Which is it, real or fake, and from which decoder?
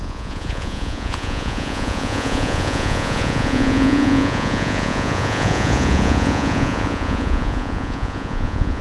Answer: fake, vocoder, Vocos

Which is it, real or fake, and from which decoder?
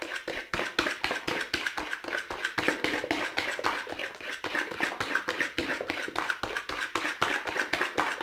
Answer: real